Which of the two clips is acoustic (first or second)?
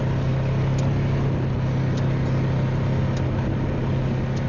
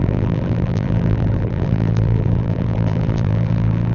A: first